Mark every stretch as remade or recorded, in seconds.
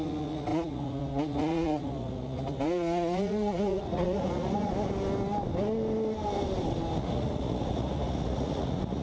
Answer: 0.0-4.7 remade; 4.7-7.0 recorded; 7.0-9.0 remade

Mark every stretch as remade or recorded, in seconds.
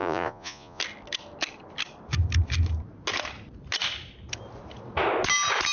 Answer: 0.0-0.8 remade; 0.8-5.7 recorded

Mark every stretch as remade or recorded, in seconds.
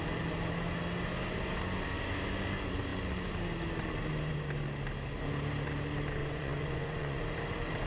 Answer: 0.0-6.2 recorded; 6.2-7.2 remade; 7.2-7.9 recorded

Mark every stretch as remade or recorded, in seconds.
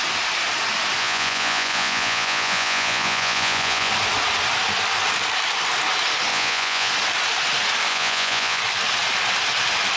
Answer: 0.0-1.0 recorded; 1.0-3.9 remade; 3.9-6.3 recorded; 6.3-6.9 remade; 6.9-7.9 recorded; 7.9-8.6 remade; 8.6-10.0 recorded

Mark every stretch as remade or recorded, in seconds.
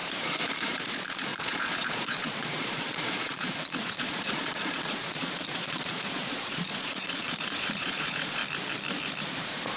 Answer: 0.0-0.6 recorded; 0.6-8.4 remade; 8.4-9.4 recorded; 9.4-9.8 remade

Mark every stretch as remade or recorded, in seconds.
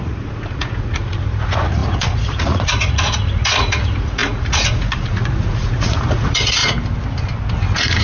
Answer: 0.0-6.6 remade; 6.6-7.5 recorded; 7.5-8.0 remade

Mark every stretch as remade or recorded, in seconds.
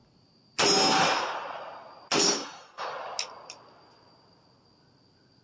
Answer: 0.0-5.4 recorded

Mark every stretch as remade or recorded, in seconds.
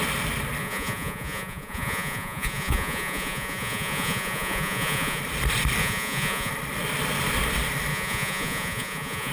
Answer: 0.0-0.6 recorded; 0.6-5.2 remade; 5.2-5.8 recorded; 5.8-6.5 remade; 6.5-7.9 recorded; 7.9-9.3 remade